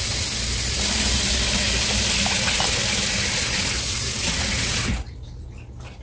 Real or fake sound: real